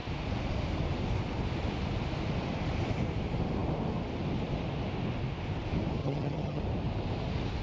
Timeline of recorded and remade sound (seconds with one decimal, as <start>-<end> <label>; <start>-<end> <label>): 0.0-6.0 recorded; 6.0-6.6 remade; 6.6-7.6 recorded